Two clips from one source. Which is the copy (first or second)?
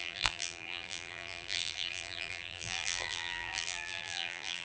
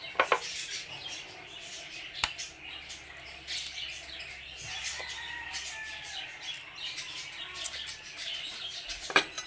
first